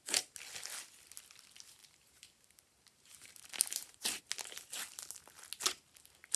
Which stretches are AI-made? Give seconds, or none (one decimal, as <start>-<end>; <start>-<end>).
1.8-4.2